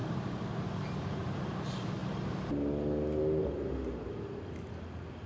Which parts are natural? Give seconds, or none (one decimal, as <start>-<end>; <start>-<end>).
1.4-5.3